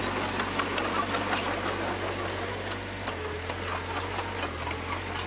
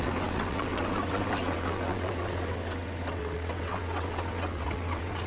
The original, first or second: first